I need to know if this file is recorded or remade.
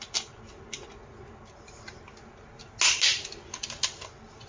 recorded